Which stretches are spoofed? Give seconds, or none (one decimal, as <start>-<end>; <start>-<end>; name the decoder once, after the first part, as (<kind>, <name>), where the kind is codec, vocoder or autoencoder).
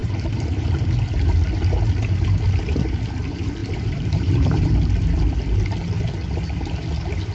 0.0-0.9 (vocoder, BigVGAN v2); 3.6-4.7